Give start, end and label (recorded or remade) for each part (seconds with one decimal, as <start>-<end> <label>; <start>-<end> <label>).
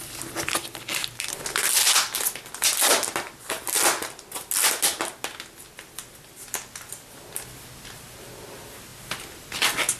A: 0.0-10.0 recorded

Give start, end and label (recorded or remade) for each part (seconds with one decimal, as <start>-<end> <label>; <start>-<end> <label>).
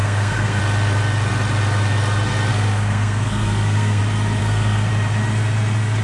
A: 0.0-0.6 remade; 0.6-2.5 recorded; 2.5-4.0 remade; 4.0-4.4 recorded; 4.4-4.9 remade; 4.9-6.0 recorded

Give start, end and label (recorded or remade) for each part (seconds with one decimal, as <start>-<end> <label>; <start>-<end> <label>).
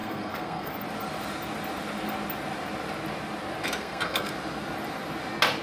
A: 0.0-0.7 remade; 0.7-3.8 recorded; 3.8-4.3 remade; 4.3-5.6 recorded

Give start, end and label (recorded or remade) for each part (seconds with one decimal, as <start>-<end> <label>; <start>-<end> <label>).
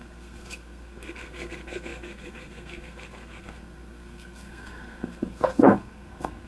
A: 0.0-6.5 remade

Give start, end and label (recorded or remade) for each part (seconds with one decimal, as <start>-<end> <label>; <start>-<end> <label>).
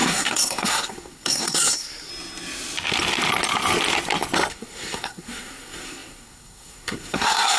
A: 0.0-2.1 remade; 2.1-4.5 recorded; 4.5-7.6 remade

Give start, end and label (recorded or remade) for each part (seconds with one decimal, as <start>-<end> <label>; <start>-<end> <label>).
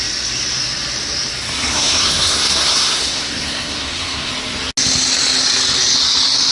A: 0.0-1.7 recorded; 1.7-4.3 remade; 4.3-6.5 recorded